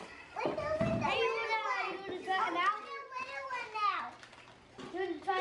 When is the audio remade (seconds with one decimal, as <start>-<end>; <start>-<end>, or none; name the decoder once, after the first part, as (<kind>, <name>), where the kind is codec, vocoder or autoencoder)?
none